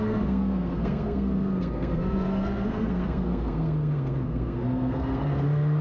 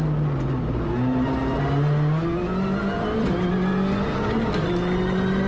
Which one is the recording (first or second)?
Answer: second